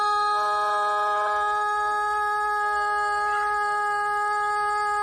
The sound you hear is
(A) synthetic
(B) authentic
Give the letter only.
B